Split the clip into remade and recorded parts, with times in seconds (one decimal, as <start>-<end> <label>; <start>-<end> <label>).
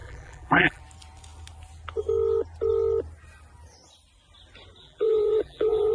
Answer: 0.0-0.8 remade; 0.8-4.8 recorded; 4.8-5.9 remade